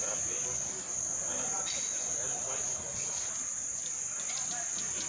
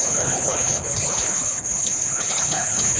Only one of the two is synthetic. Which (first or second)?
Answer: second